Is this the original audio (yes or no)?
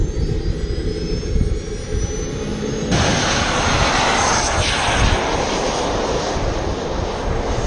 yes